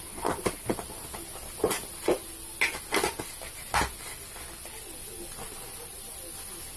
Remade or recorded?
recorded